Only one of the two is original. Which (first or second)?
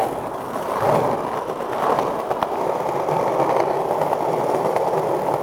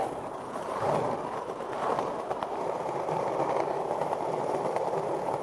first